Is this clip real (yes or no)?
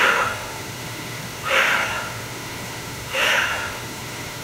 no